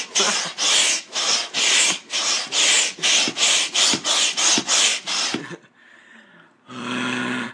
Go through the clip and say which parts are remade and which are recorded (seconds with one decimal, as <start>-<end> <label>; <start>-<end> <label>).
0.0-7.5 recorded